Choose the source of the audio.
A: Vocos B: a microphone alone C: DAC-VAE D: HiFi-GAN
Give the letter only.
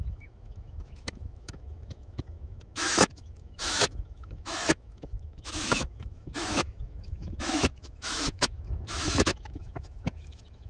C